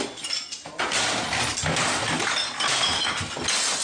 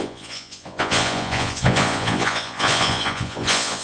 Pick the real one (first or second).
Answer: first